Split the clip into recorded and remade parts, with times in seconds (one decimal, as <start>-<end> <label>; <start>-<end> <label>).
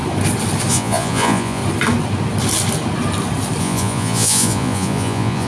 0.0-0.7 recorded; 0.7-1.6 remade; 1.6-3.6 recorded; 3.6-5.5 remade